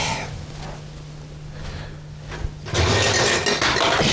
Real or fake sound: real